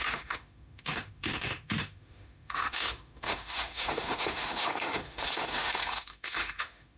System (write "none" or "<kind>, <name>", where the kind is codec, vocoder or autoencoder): autoencoder, DAC-VAE